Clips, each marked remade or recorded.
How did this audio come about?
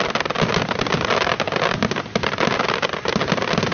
recorded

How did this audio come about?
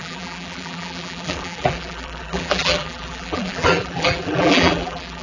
remade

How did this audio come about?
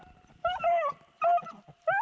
recorded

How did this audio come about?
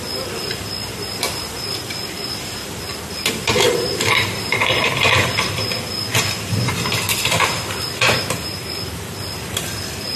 remade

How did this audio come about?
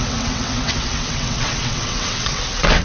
remade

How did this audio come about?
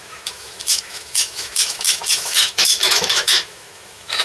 remade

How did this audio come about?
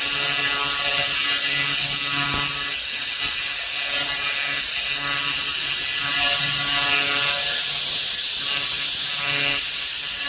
recorded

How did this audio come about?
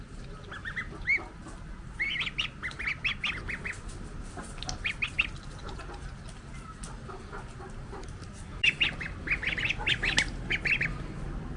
recorded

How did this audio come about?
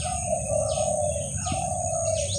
recorded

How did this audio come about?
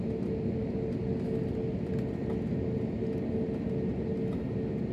recorded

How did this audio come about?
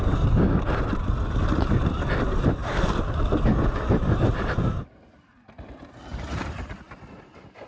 recorded